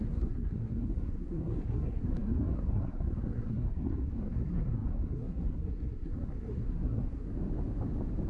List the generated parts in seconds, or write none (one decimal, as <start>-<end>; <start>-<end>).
0.0-7.3